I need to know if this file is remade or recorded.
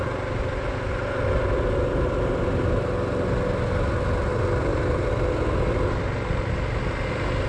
recorded